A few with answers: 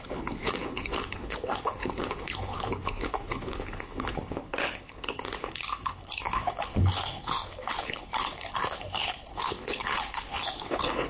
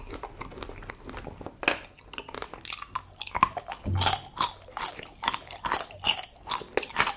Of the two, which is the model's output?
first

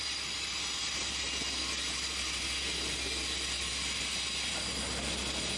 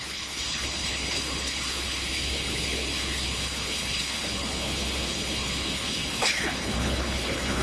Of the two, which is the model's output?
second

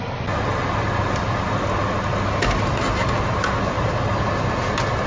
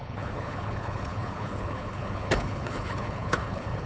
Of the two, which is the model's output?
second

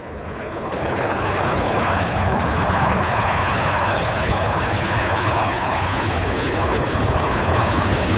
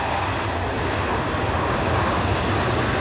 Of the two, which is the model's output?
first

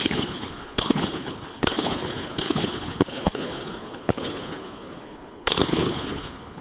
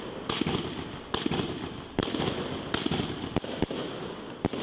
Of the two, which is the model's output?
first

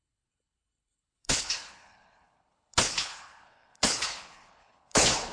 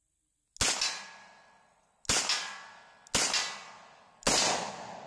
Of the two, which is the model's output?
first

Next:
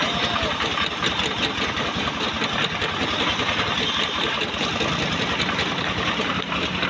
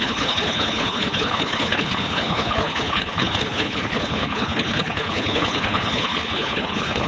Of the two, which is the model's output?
second